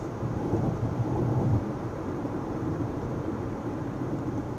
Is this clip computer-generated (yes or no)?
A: yes